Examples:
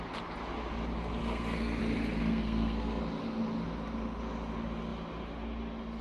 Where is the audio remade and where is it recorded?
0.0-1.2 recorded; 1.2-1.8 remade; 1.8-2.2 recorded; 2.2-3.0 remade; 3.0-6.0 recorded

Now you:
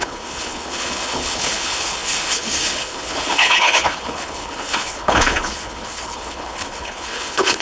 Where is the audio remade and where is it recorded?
0.0-7.6 remade

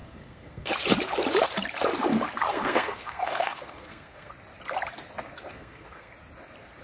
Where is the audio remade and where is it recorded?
0.0-0.7 remade; 0.7-2.5 recorded; 2.5-4.3 remade; 4.3-5.5 recorded; 5.5-6.1 remade; 6.1-6.8 recorded

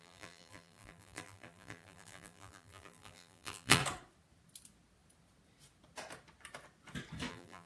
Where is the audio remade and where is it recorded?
0.0-3.8 remade; 3.8-7.3 recorded; 7.3-7.7 remade

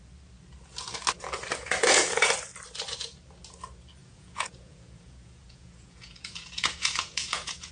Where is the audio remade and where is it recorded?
0.0-1.6 recorded; 1.6-2.3 remade; 2.3-4.0 recorded; 4.0-7.7 remade

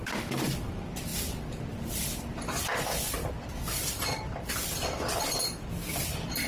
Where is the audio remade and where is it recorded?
0.0-6.5 remade

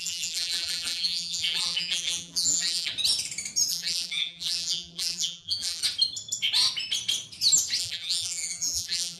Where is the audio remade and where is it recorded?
0.0-2.9 remade; 2.9-3.7 recorded; 3.7-5.8 remade; 5.8-7.8 recorded; 7.8-9.2 remade

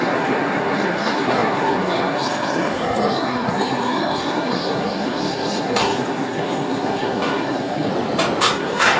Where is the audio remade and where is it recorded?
0.0-7.9 remade; 7.9-8.4 recorded; 8.4-9.0 remade